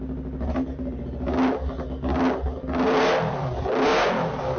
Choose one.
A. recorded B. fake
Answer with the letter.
A